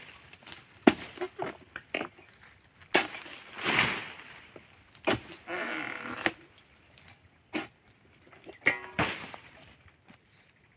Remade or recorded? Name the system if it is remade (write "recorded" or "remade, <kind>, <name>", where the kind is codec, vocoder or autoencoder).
recorded